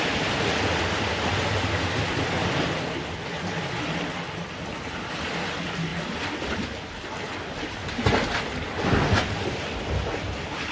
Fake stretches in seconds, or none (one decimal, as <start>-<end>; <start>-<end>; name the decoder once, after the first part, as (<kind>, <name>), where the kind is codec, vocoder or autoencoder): none